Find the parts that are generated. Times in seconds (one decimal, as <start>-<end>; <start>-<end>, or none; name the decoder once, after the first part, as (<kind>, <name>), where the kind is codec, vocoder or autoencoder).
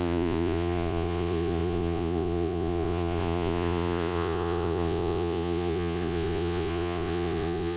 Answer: 0.0-7.8 (vocoder, Vocos)